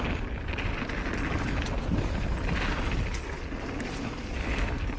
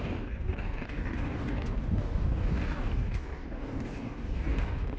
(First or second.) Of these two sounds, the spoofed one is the second